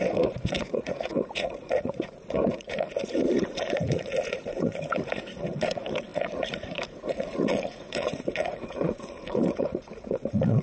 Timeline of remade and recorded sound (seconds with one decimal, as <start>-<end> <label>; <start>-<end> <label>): 0.0-10.6 remade